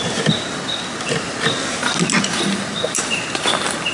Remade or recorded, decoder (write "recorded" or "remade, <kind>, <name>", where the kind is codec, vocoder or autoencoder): recorded